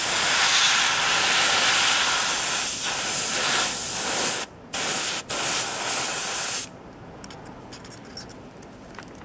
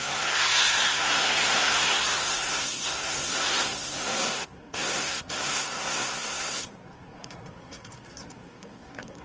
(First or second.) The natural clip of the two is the first